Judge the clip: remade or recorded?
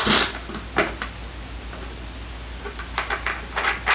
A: recorded